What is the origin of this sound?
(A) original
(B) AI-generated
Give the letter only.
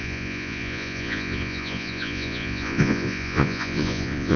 B